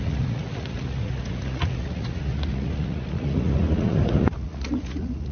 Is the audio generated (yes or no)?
yes